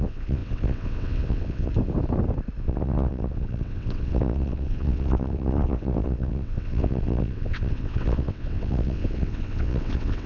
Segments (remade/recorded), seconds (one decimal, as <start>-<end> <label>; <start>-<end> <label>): 0.0-1.7 remade; 1.7-2.6 recorded; 2.6-10.3 remade